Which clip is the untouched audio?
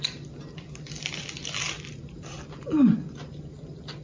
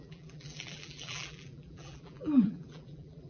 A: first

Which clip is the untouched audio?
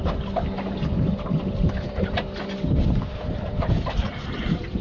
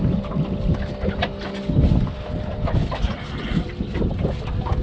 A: second